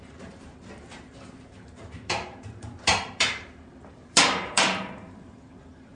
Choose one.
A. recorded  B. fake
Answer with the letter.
B